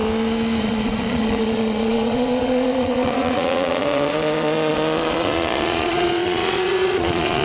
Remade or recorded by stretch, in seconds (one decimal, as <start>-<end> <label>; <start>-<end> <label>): 0.0-0.6 recorded; 0.6-7.4 remade